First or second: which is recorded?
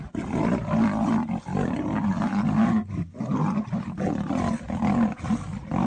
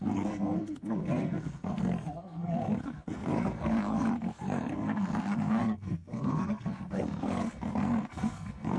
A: first